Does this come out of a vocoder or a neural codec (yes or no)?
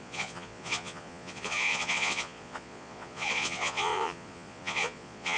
yes